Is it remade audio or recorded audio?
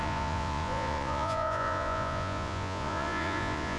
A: remade